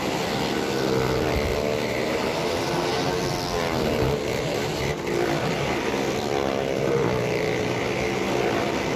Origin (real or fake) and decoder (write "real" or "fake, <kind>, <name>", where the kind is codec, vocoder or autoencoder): real